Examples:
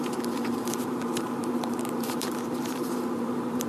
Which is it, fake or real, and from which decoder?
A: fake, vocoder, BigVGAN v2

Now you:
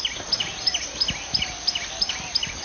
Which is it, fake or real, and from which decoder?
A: real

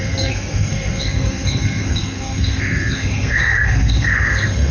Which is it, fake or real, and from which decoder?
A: fake, codec, SNAC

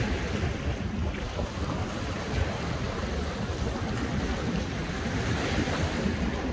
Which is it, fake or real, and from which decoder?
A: real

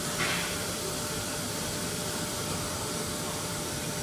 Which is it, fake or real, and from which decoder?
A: real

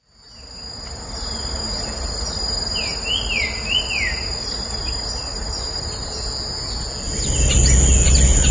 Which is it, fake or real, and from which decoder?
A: real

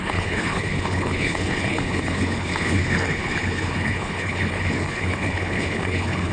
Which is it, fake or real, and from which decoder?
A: fake, codec, HILCodec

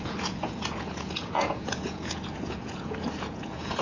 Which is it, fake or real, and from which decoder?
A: fake, vocoder, Vocos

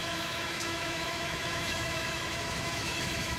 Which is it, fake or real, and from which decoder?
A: fake, autoencoder, DAC-VAE